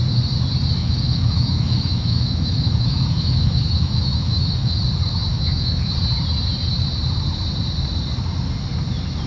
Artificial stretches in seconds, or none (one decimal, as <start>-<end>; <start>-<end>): 0.8-4.8; 5.3-5.9